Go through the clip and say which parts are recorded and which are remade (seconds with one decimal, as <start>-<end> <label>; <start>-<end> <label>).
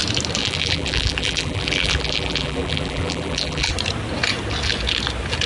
0.0-0.4 recorded; 0.4-3.7 remade; 3.7-5.5 recorded